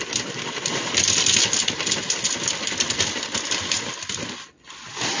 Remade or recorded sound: recorded